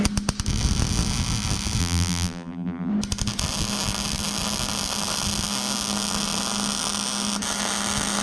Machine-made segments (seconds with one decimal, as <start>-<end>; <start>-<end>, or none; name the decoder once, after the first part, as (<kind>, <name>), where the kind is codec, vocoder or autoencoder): 1.8-2.9 (vocoder, BigVGAN v2)